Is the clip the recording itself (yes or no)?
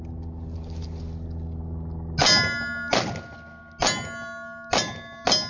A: yes